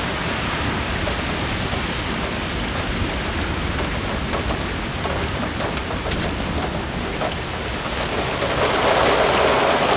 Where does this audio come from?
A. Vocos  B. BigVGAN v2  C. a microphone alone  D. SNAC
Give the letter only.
C